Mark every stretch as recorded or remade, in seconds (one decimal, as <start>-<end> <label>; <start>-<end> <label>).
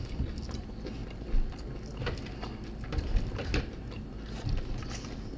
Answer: 0.0-5.4 recorded